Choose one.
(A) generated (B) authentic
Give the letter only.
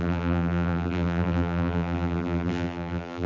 A